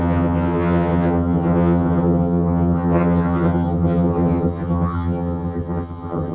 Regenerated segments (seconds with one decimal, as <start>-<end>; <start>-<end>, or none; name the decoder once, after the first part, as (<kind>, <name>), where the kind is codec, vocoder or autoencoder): 0.0-6.3 (vocoder, HiFi-GAN)